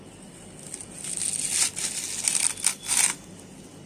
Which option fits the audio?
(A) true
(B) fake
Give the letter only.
A